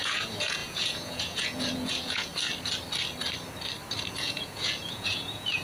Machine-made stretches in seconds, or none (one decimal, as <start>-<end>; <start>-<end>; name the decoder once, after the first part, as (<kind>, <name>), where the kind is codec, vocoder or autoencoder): 0.0-2.3 (vocoder, Vocos); 4.1-5.6